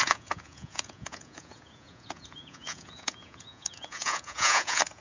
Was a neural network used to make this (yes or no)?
yes